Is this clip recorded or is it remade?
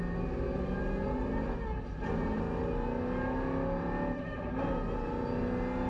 recorded